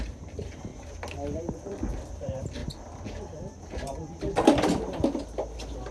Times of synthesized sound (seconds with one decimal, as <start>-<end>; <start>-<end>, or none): 0.0-0.7; 1.4-2.6